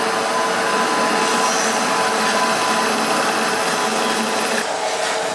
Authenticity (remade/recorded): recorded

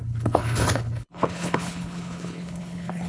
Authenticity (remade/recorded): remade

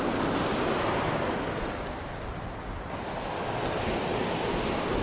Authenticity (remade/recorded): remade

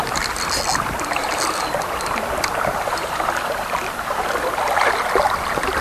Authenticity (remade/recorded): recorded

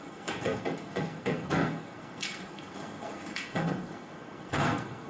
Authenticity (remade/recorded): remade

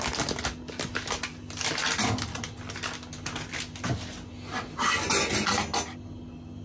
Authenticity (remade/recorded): recorded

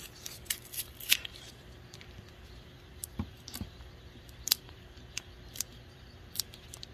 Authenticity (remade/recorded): remade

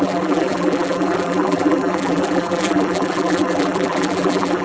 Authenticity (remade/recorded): remade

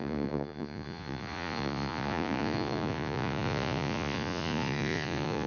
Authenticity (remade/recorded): remade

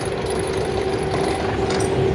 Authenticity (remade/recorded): recorded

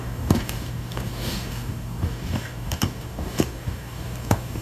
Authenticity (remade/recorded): remade